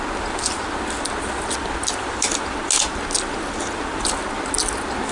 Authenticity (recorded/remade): recorded